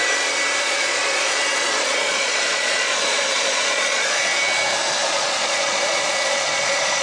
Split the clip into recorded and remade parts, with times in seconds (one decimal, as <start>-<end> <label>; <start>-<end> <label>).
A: 0.0-0.6 recorded; 0.6-4.3 remade; 4.3-4.9 recorded; 4.9-7.0 remade